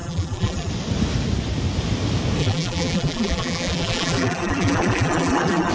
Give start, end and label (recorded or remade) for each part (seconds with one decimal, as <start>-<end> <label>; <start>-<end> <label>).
0.0-0.7 remade; 0.7-2.4 recorded; 2.4-5.7 remade